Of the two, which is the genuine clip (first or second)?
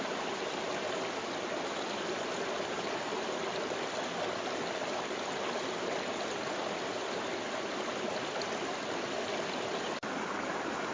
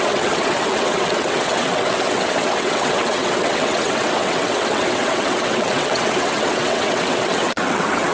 first